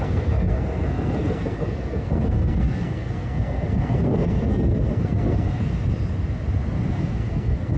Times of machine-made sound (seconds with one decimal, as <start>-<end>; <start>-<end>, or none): 0.0-5.7; 6.9-7.8